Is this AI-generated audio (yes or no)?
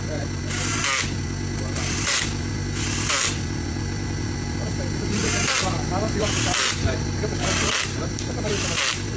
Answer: no